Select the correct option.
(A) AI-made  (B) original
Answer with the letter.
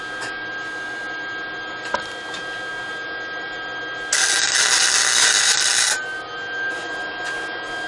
B